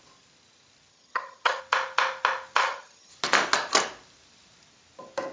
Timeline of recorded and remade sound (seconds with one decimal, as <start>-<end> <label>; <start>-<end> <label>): 0.0-0.9 recorded; 0.9-1.6 remade; 1.6-2.6 recorded; 2.6-3.1 remade; 3.1-5.3 recorded